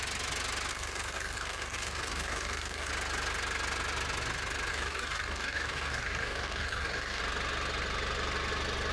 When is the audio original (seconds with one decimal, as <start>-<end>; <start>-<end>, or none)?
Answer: 0.0-0.7; 2.9-4.7; 7.2-8.9